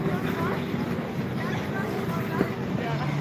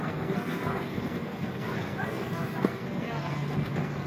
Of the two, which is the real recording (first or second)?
first